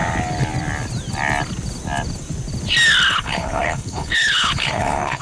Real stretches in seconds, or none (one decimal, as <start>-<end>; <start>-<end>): 0.0-3.1